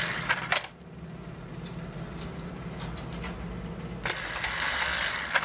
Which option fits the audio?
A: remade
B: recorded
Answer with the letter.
B